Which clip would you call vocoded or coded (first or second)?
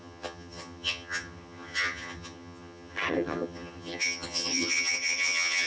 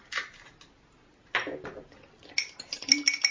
first